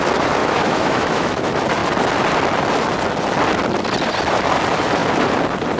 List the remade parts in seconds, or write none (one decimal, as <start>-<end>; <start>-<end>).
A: 0.4-1.4